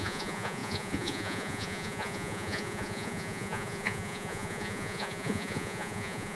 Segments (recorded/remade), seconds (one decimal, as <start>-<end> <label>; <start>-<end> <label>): 0.0-6.3 remade